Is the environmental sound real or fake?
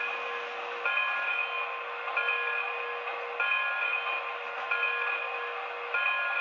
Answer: real